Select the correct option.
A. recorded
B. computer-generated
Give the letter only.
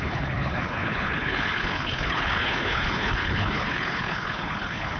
B